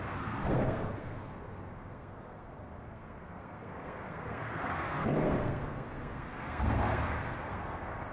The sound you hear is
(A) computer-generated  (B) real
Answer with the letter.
A